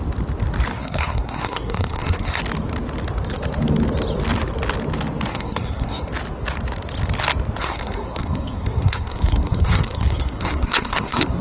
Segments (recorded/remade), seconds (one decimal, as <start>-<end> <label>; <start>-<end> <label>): 0.0-0.7 recorded; 0.7-2.4 remade; 2.4-5.3 recorded; 5.3-6.1 remade; 6.1-7.6 recorded; 7.6-11.4 remade